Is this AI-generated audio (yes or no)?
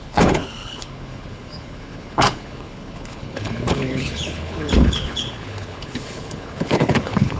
yes